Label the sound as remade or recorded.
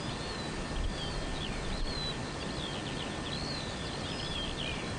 recorded